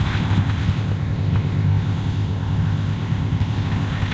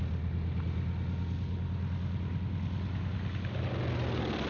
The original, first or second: second